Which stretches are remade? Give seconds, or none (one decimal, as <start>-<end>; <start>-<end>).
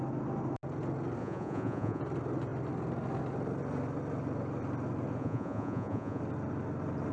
1.2-2.0; 5.2-6.2